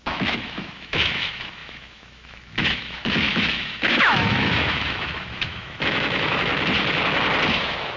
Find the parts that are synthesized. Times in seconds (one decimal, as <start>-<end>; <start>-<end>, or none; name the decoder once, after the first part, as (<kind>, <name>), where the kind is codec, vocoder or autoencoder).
0.0-6.5 (autoencoder, DAC-VAE); 7.5-8.0